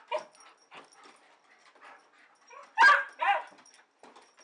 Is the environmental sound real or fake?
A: real